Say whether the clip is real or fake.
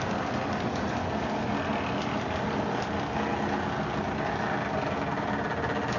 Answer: real